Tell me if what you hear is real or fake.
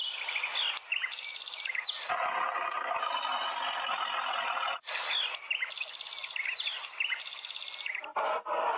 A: real